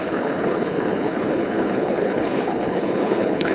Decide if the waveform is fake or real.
fake